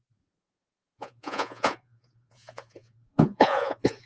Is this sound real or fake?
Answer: fake